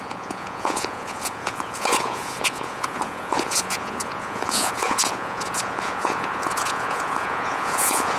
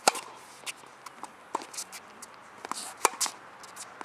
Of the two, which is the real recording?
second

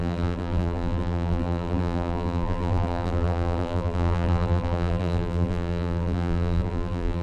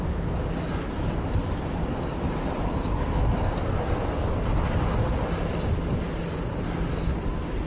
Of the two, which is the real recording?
second